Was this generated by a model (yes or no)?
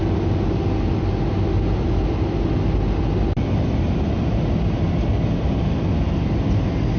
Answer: no